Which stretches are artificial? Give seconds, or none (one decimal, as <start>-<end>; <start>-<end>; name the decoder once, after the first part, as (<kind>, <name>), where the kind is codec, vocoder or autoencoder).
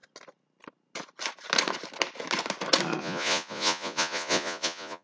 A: 3.0-5.0 (vocoder, Vocos)